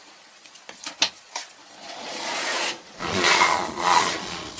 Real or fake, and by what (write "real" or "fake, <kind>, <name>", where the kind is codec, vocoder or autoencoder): fake, vocoder, Vocos